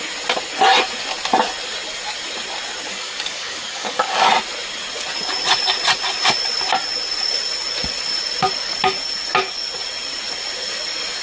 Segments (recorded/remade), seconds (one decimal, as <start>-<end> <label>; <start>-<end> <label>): 0.0-2.9 recorded; 2.9-4.3 remade; 4.3-11.2 recorded